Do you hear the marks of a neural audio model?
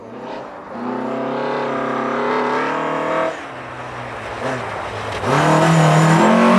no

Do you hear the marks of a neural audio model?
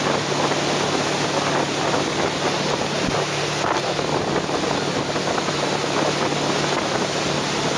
no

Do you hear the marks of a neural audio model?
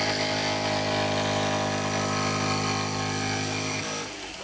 no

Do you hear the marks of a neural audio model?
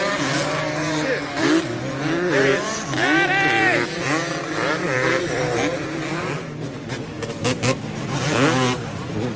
no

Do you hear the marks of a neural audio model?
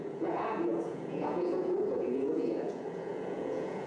yes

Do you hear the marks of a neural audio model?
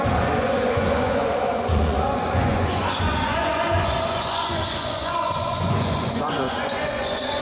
yes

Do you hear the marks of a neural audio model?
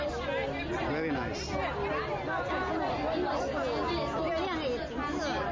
no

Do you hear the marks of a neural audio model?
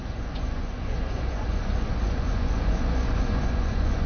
yes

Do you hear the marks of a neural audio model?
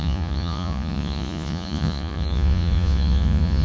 yes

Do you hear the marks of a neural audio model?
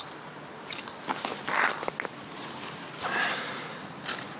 no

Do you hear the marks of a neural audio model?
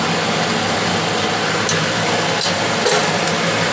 no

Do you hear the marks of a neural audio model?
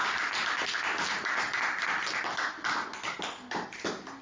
no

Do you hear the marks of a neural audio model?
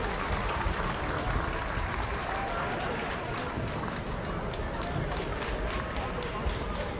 no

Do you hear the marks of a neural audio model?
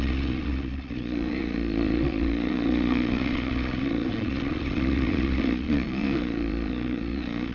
yes